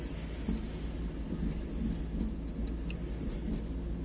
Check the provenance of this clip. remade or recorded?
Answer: recorded